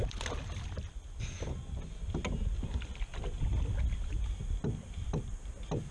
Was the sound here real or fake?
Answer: real